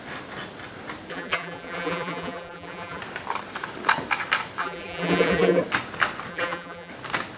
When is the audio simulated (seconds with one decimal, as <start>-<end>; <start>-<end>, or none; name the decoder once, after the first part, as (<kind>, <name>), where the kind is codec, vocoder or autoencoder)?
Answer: 1.1-3.0 (vocoder, BigVGAN v2); 4.6-5.6; 6.3-6.9